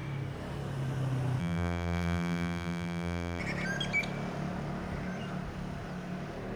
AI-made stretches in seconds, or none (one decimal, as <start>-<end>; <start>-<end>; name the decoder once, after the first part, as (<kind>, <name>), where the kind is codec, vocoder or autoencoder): 1.4-3.4 (vocoder, BigVGAN v2)